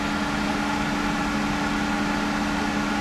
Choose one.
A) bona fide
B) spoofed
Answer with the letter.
A